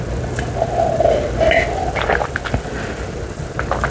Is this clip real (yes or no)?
yes